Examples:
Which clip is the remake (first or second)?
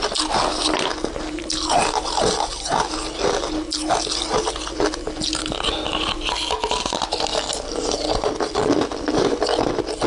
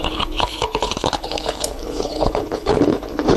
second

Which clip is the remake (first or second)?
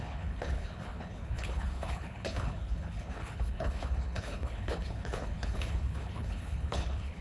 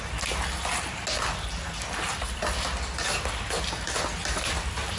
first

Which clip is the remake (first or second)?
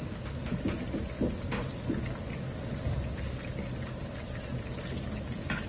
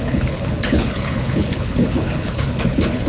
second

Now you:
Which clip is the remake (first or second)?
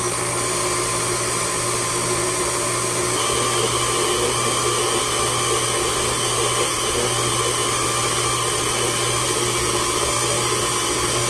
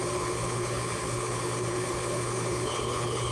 second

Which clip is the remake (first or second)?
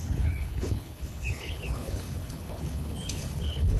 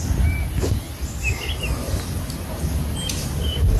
first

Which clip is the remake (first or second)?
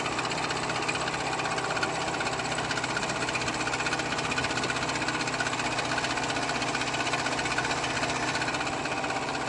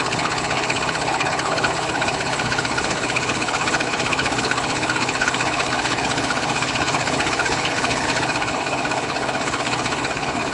second